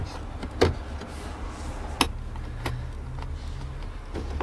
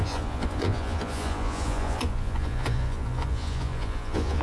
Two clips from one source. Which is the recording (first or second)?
first